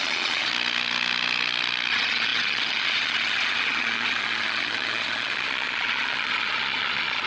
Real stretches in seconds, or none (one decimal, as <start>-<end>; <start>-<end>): 0.5-1.9